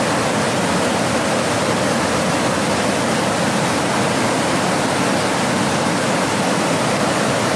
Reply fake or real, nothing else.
real